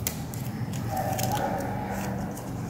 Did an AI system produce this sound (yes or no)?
no